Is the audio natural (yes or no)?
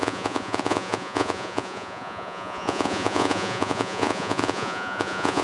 no